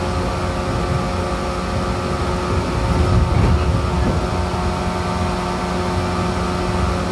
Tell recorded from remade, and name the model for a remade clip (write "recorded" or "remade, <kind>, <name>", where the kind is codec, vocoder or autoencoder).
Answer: recorded